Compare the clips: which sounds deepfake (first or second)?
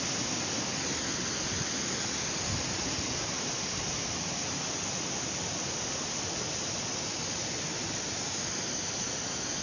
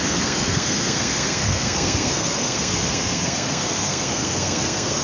second